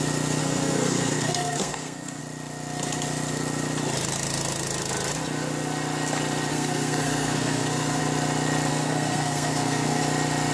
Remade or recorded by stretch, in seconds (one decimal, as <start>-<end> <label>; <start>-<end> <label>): 0.0-0.4 recorded; 0.4-2.2 remade; 2.2-6.5 recorded; 6.5-8.0 remade; 8.0-8.7 recorded; 8.7-10.0 remade; 10.0-10.5 recorded